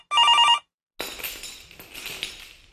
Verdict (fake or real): real